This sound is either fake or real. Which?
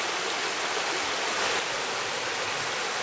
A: real